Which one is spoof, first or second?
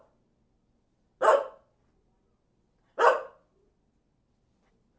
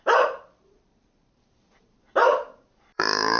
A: second